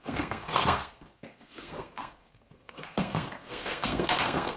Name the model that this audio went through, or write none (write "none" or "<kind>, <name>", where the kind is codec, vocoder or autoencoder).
codec, SNAC